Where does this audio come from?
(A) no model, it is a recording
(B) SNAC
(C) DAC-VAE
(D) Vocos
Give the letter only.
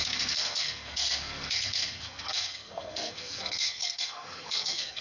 B